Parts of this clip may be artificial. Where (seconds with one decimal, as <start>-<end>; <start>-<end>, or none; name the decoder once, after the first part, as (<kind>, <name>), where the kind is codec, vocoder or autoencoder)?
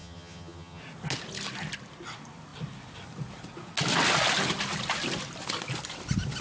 0.0-0.8 (vocoder, HiFi-GAN)